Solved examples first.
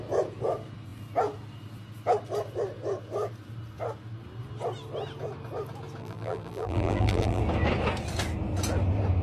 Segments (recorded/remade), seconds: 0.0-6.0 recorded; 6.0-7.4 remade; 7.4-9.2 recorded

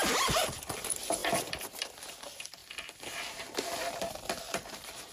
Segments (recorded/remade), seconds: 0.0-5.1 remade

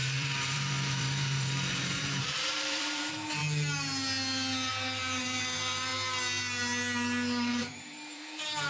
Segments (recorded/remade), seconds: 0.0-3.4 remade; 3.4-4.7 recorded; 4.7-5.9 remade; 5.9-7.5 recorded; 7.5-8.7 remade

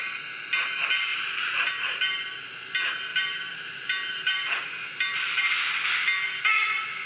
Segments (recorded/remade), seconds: 0.0-1.1 recorded; 1.1-1.7 remade; 1.7-3.1 recorded; 3.1-5.4 remade; 5.4-7.1 recorded

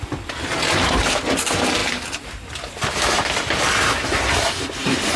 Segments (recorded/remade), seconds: 0.0-5.2 recorded

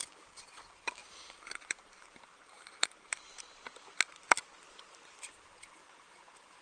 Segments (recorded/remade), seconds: 0.0-1.0 recorded; 1.0-3.4 remade; 3.4-5.8 recorded; 5.8-6.6 remade